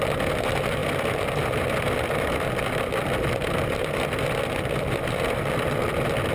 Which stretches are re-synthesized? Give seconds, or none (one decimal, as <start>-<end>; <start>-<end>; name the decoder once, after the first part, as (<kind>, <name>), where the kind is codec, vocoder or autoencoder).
none